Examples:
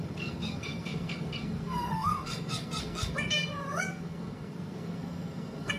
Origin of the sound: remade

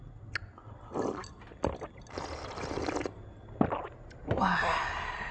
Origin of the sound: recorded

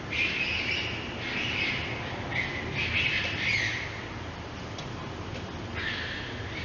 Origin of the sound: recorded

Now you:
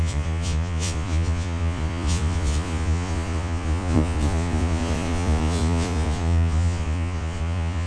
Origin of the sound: remade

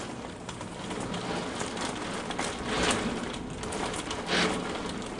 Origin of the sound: recorded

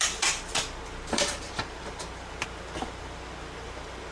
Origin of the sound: remade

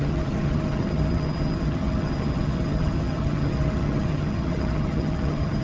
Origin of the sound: remade